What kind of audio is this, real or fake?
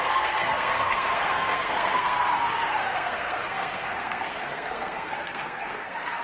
fake